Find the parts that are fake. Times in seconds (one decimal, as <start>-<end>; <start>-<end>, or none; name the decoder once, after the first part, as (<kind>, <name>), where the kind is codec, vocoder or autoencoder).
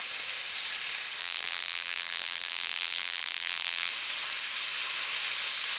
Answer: 1.2-3.9 (vocoder, BigVGAN v2)